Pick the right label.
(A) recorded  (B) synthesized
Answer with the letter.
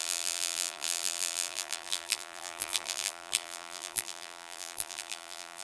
B